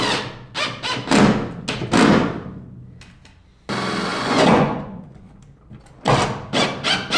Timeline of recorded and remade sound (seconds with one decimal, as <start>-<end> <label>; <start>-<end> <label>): 0.0-4.1 recorded; 4.1-5.4 remade; 5.4-7.2 recorded